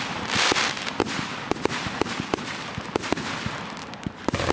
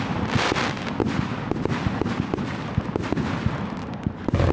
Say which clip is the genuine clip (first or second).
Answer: second